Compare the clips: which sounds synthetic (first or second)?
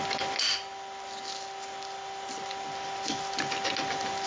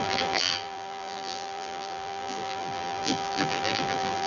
second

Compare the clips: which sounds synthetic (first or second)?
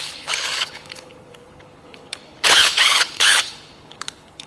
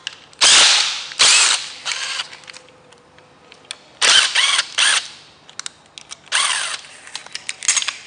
first